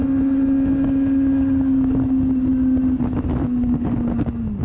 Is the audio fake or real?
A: real